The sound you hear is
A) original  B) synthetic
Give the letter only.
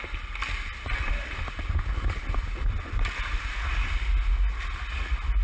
A